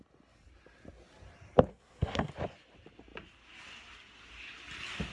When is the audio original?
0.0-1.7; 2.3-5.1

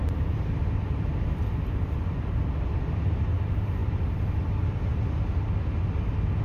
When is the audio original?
0.0-6.4

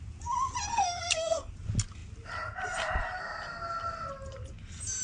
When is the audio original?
0.0-0.7; 1.5-5.0

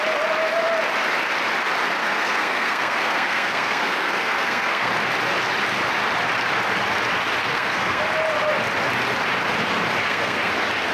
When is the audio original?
0.0-2.0; 4.9-7.4; 8.0-10.0; 10.5-10.9

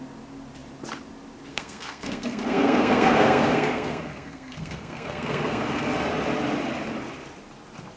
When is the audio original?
0.0-1.5; 5.9-8.0